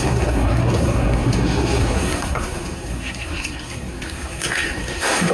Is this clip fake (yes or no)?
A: yes